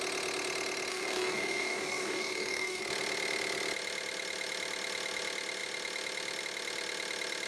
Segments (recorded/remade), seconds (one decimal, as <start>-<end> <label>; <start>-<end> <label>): 0.0-0.9 recorded; 0.9-2.8 remade; 2.8-7.5 recorded